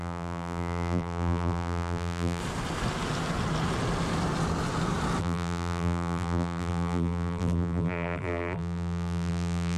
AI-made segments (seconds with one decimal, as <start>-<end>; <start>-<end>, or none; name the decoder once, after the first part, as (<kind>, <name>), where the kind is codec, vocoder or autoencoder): 0.0-2.4 (vocoder, BigVGAN v2); 5.2-9.8